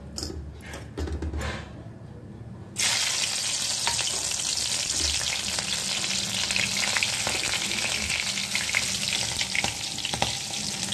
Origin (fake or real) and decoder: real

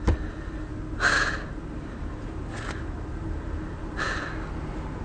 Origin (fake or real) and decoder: real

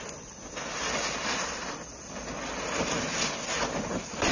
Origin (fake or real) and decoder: real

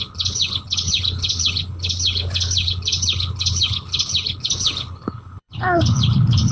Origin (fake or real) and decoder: fake, codec, HILCodec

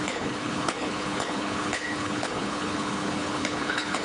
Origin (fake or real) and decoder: fake, codec, HILCodec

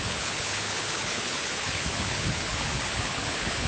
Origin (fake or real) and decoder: fake, codec, HILCodec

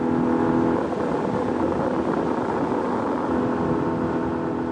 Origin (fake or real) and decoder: real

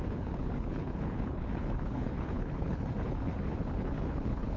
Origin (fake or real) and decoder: fake, codec, HILCodec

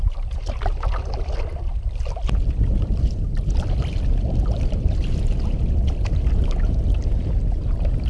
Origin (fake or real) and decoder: real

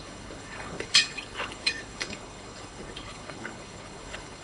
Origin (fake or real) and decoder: fake, codec, HILCodec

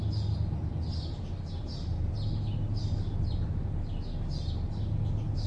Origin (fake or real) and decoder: real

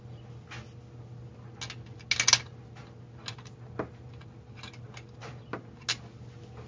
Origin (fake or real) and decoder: real